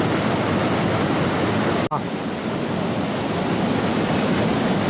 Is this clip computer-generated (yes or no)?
no